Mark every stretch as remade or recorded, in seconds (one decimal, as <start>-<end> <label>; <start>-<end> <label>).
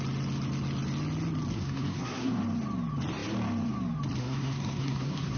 0.0-1.5 recorded; 1.5-2.4 remade; 2.4-4.2 recorded; 4.2-5.4 remade